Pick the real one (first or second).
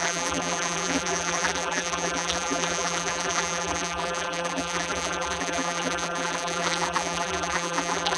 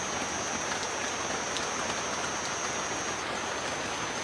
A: second